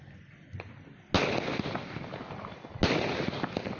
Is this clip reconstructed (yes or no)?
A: no